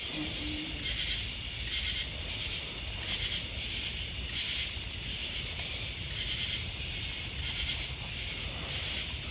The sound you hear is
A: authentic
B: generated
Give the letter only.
A